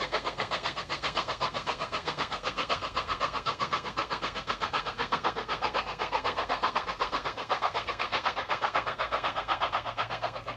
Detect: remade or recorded remade